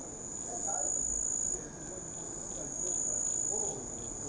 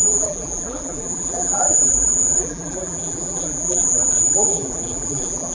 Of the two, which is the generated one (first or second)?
second